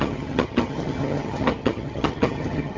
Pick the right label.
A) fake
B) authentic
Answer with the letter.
A